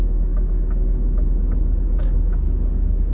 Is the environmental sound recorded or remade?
remade